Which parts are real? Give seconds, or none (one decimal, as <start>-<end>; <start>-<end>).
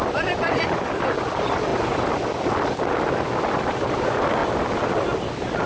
0.0-5.7